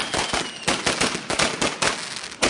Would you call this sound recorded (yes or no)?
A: yes